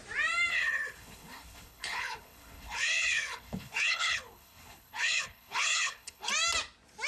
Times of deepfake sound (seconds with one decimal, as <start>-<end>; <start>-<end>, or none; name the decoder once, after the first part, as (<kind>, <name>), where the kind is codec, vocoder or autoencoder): 0.5-6.3 (codec, HILCodec)